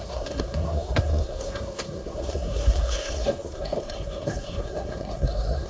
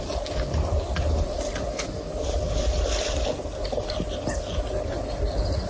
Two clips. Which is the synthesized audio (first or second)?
first